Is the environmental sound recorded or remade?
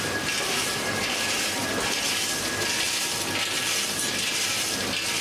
recorded